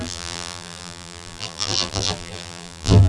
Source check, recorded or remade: remade